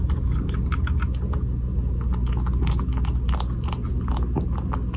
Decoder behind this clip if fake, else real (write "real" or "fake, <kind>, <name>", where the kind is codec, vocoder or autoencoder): real